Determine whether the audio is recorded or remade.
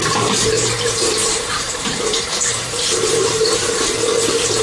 remade